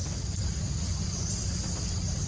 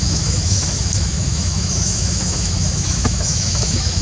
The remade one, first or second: second